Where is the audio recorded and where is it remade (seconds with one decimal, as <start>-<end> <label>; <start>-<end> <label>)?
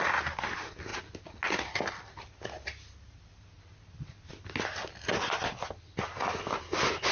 0.0-7.1 recorded